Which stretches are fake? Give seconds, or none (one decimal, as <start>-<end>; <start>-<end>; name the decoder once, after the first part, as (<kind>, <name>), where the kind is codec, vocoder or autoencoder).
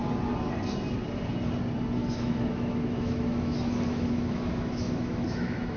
2.0-5.8 (autoencoder, DAC-VAE)